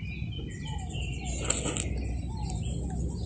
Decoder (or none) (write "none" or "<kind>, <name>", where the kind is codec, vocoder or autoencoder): none